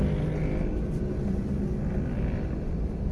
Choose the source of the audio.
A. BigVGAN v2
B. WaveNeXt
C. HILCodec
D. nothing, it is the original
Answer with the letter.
D